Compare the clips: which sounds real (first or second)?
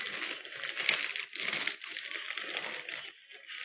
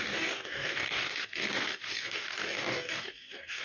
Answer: first